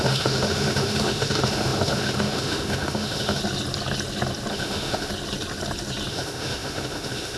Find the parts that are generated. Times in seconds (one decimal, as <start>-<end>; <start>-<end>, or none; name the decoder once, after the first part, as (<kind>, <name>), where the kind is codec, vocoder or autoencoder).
0.0-3.4 (autoencoder, DAC-VAE); 4.5-5.1; 6.1-7.4

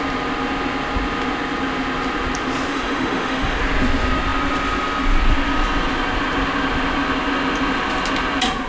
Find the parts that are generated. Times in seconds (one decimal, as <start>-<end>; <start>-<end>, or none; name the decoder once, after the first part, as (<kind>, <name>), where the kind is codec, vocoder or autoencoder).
2.7-3.6 (autoencoder, DAC-VAE)

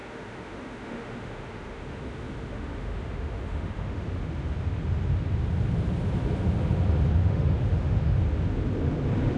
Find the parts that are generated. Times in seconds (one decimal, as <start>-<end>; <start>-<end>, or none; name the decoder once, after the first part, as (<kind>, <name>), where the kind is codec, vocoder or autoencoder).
0.0-4.2 (autoencoder, DAC-VAE); 7.2-8.2